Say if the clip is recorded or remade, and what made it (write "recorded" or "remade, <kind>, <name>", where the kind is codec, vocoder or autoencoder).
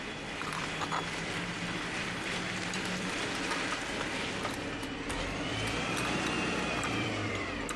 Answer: remade, vocoder, BigVGAN v2